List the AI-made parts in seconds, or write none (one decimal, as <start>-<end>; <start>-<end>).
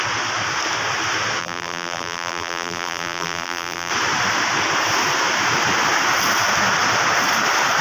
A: 1.4-3.9